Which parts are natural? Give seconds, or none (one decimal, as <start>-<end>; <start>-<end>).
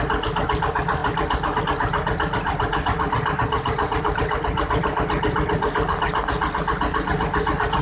0.0-7.8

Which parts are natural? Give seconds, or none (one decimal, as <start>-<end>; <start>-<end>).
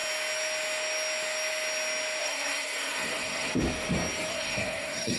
0.0-2.2; 3.5-4.3